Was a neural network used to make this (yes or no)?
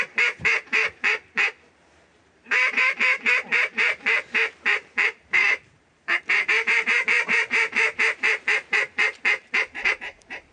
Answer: yes